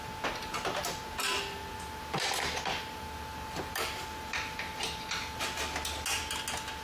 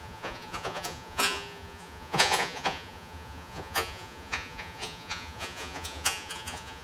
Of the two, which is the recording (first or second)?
first